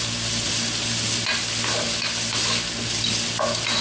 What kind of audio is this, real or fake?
real